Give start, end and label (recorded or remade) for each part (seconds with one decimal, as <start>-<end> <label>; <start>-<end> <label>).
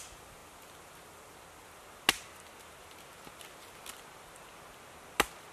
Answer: 0.0-5.5 recorded